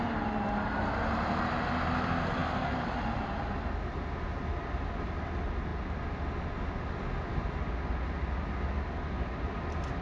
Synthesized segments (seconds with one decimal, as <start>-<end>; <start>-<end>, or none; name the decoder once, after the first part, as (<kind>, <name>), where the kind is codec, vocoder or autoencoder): none